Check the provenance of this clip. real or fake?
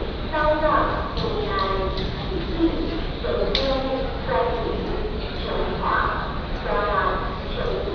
real